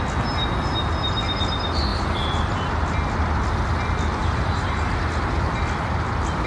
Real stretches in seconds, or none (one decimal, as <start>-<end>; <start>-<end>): 0.0-1.9; 2.5-4.2; 4.9-6.5